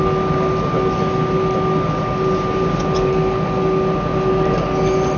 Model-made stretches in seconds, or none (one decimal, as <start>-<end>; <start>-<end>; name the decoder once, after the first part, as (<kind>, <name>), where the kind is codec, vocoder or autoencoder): none